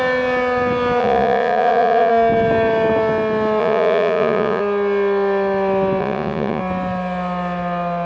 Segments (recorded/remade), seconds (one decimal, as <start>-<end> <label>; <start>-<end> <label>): 0.0-1.0 recorded; 1.0-2.1 remade; 2.1-3.6 recorded; 3.6-4.6 remade; 4.6-6.0 recorded; 6.0-6.6 remade; 6.6-8.1 recorded